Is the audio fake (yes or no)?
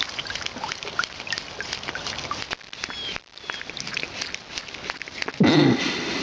no